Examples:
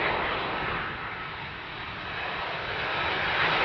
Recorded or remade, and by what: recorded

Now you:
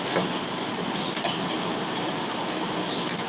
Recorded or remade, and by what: recorded